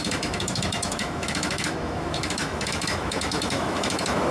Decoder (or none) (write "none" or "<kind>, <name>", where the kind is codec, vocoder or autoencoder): autoencoder, DAC-VAE